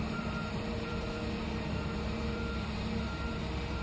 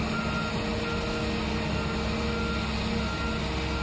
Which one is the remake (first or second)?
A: first